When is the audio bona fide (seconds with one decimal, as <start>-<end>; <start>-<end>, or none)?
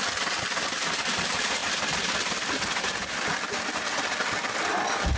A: 0.0-5.2